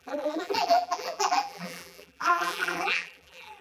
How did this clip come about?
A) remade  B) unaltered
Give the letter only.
A